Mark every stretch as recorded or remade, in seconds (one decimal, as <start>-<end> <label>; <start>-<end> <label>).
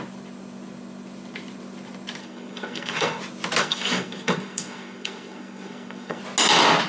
0.0-2.2 recorded; 2.2-3.2 remade; 3.2-3.6 recorded; 3.6-6.2 remade; 6.2-6.9 recorded